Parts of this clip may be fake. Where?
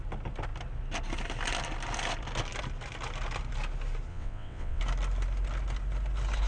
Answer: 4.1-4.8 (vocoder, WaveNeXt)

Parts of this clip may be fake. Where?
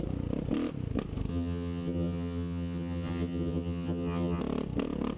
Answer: 1.3-4.4 (vocoder, HiFi-GAN)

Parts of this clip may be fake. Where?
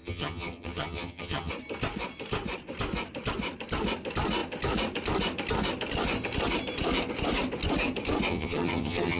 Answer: 0.0-1.5 (vocoder, HiFi-GAN); 8.3-9.2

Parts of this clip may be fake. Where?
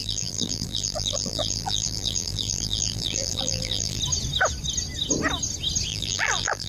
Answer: 0.0-4.0 (vocoder, BigVGAN v2); 5.9-6.7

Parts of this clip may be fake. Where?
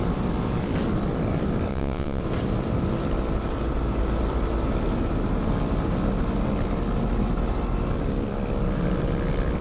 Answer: 1.7-2.2 (vocoder, WaveNeXt)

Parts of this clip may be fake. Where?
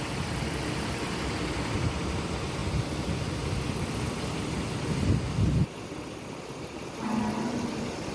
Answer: none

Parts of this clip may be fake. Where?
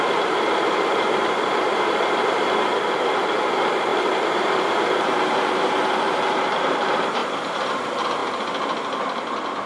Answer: 0.0-8.2 (vocoder, BigVGAN v2)